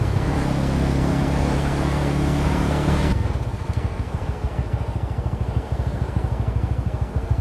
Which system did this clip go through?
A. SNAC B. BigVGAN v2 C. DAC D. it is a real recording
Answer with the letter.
A